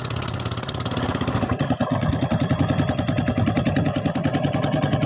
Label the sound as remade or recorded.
remade